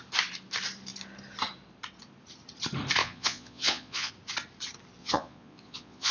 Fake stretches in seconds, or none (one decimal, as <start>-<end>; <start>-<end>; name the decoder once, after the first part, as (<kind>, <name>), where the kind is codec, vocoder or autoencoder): 3.0-4.1 (vocoder, Vocos); 5.0-6.1